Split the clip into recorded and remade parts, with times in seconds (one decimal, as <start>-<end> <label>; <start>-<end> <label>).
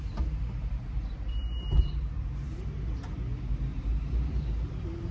0.0-0.6 recorded; 0.6-2.5 remade; 2.5-3.7 recorded; 3.7-4.4 remade; 4.4-5.1 recorded